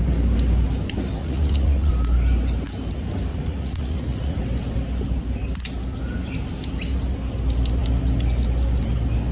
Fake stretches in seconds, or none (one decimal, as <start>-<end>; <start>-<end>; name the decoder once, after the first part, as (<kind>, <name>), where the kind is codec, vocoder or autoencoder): 1.2-1.9 (vocoder, Vocos); 3.3-4.4